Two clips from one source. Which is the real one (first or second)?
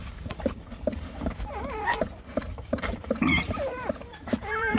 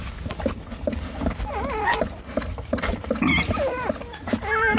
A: second